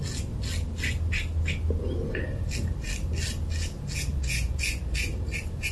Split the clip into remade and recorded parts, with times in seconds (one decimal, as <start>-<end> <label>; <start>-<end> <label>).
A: 0.0-4.1 recorded; 4.1-4.8 remade; 4.8-5.7 recorded